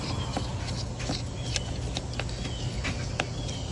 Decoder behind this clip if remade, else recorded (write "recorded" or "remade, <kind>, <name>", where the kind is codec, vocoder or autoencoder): recorded